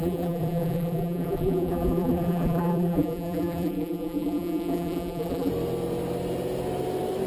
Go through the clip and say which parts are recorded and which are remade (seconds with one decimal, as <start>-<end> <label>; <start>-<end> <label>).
0.0-5.5 remade; 5.5-7.3 recorded